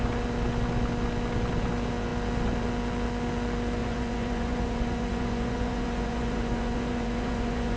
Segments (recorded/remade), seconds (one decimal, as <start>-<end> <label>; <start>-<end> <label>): 0.0-3.8 recorded; 3.8-7.8 remade